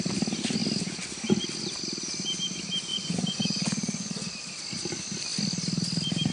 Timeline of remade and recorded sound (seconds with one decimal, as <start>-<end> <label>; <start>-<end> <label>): 0.0-2.9 recorded; 2.9-4.3 remade; 4.3-6.3 recorded